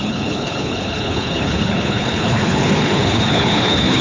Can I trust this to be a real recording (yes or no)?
no